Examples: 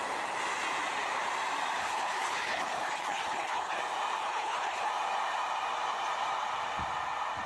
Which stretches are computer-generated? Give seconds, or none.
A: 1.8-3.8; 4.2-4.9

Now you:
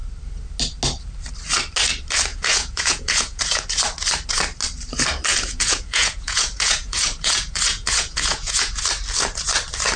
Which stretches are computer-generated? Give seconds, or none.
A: 2.3-3.8; 5.3-8.7

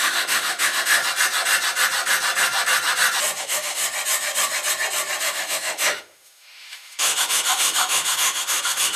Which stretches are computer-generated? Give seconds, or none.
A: 0.0-1.0; 3.4-3.8; 5.2-9.0

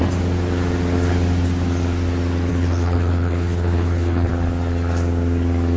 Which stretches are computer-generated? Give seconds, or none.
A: 2.5-4.3

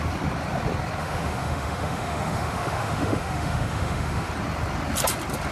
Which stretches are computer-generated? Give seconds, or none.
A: 1.0-4.3